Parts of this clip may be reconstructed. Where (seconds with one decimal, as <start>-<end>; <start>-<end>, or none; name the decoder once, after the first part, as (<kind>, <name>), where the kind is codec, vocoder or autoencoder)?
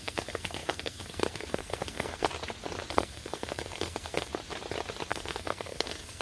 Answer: 0.0-2.3 (codec, SNAC); 2.9-4.3; 5.1-6.2